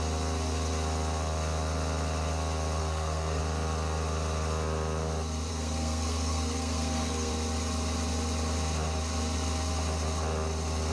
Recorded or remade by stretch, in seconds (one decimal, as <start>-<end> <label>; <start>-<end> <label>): 0.0-2.8 recorded; 2.8-3.4 remade; 3.4-5.5 recorded; 5.5-7.3 remade; 7.3-10.9 recorded